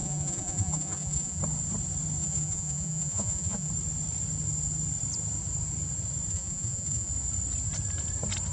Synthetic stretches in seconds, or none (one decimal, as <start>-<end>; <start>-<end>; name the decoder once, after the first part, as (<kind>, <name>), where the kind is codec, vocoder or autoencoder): 0.0-1.4 (vocoder, Vocos); 2.2-3.7; 6.3-7.1